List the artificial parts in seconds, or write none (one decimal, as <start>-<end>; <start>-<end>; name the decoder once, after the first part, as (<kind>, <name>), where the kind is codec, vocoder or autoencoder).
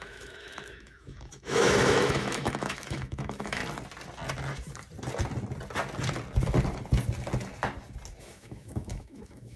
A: 0.0-3.6 (autoencoder, DAC-VAE); 8.2-9.6